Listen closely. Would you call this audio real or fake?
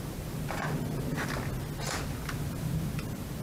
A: real